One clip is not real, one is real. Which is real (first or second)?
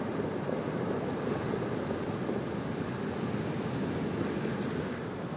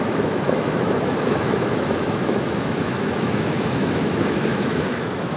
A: first